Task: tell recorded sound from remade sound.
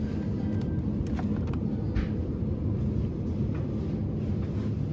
recorded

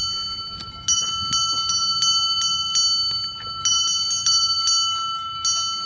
recorded